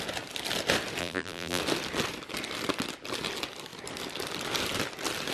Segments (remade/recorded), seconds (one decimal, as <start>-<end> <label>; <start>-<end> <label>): 0.0-1.0 recorded; 1.0-1.6 remade; 1.6-5.3 recorded